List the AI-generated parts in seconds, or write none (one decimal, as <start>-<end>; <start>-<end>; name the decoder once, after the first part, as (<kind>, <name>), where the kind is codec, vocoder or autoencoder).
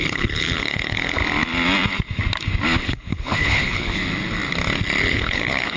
0.0-1.2 (codec, HILCodec); 2.8-4.0; 5.1-5.8